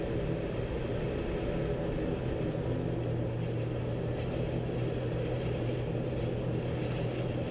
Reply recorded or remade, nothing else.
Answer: recorded